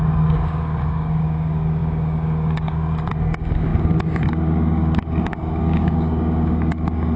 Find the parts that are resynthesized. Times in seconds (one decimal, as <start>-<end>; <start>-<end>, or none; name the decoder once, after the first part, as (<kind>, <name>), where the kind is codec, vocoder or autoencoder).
0.0-7.2 (codec, DAC)